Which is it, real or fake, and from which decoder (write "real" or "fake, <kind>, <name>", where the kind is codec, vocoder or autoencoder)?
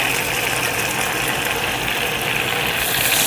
real